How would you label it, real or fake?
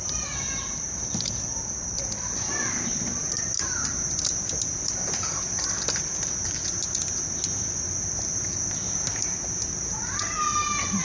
fake